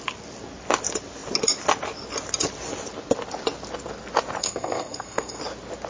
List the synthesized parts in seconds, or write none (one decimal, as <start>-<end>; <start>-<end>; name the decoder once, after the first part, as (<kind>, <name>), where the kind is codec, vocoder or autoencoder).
4.4-5.4 (codec, SNAC)